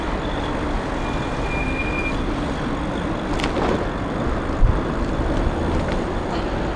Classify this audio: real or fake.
real